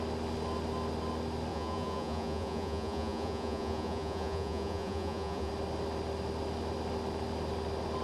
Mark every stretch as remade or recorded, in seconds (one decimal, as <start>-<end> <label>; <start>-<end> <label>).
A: 0.0-1.5 recorded; 1.5-5.5 remade; 5.5-8.0 recorded

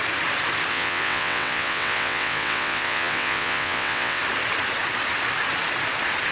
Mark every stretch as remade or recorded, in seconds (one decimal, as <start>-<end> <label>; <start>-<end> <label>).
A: 0.0-0.7 recorded; 0.7-4.2 remade; 4.2-6.3 recorded

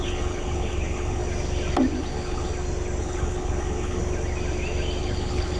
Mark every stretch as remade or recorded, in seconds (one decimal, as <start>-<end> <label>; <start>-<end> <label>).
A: 0.0-1.2 remade; 1.2-2.0 recorded; 2.0-2.5 remade; 2.5-3.0 recorded; 3.0-4.0 remade; 4.0-5.0 recorded; 5.0-5.6 remade

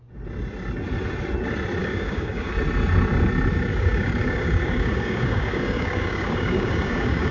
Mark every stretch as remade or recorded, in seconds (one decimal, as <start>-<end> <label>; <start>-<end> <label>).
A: 0.0-1.8 recorded; 1.8-2.5 remade; 2.5-3.7 recorded; 3.7-7.3 remade

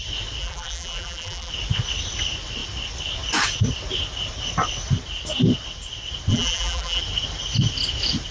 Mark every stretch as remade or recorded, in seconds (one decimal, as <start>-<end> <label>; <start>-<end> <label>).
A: 0.0-0.4 recorded; 0.4-1.5 remade; 1.5-6.3 recorded; 6.3-7.0 remade; 7.0-8.3 recorded

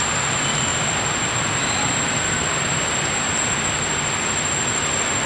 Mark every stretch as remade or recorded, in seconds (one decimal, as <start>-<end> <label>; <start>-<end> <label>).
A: 0.0-2.5 recorded; 2.5-3.3 remade; 3.3-5.3 recorded

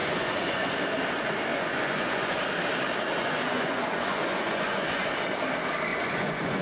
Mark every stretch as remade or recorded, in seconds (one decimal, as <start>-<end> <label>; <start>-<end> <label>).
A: 0.0-0.7 remade; 0.7-1.5 recorded; 1.5-2.4 remade; 2.4-3.2 recorded; 3.2-5.1 remade; 5.1-5.9 recorded; 5.9-6.6 remade